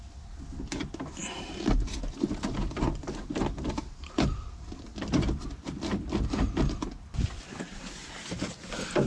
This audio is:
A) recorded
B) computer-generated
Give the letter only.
A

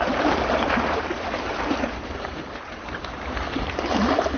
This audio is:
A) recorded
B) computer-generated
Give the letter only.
B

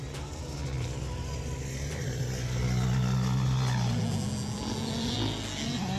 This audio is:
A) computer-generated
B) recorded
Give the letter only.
B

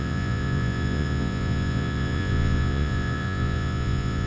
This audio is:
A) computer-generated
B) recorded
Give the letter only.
A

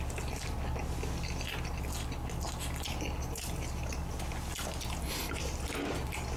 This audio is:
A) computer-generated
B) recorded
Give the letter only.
B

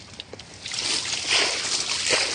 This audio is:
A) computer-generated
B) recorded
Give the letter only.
B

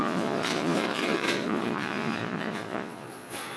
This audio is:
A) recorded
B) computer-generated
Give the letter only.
B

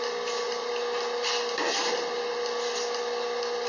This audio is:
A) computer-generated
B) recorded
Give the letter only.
B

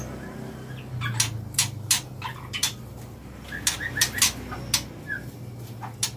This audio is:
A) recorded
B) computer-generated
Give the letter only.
A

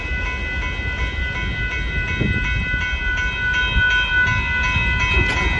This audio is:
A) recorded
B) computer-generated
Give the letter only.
A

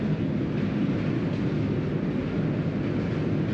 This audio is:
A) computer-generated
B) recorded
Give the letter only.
B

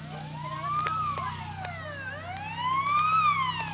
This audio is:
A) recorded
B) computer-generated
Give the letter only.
A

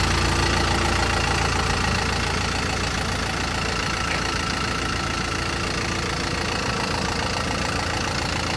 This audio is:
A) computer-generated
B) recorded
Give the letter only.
B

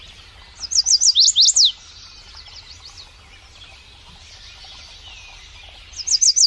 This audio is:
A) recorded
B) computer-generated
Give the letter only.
A